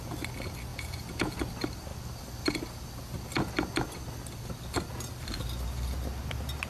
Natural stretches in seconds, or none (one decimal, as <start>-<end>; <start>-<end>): 0.0-0.7; 1.4-6.7